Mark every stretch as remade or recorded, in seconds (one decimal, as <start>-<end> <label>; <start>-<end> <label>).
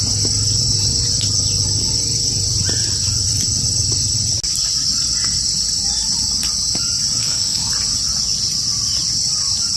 0.0-7.2 recorded; 7.2-7.7 remade; 7.7-9.8 recorded